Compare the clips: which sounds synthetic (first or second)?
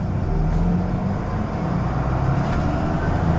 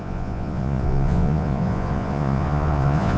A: second